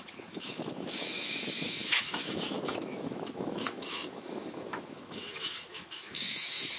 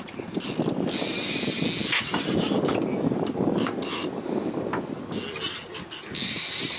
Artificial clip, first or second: first